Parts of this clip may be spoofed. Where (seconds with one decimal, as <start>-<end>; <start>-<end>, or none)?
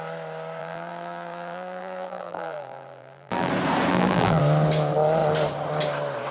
0.6-3.5; 3.9-4.4